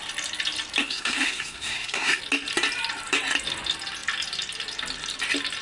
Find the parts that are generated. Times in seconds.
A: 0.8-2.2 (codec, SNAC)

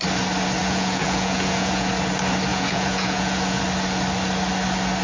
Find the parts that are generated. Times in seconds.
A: 0.6-1.9 (vocoder, Vocos); 2.5-3.6

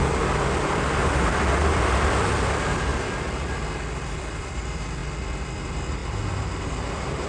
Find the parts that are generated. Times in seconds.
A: none

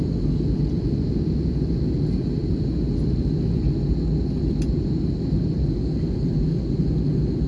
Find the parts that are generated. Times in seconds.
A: none

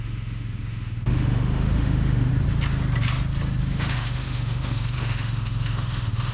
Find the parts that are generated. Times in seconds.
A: 0.0-2.3 (autoencoder, DAC-VAE); 3.7-6.3